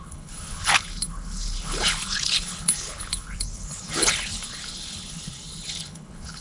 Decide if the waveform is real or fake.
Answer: fake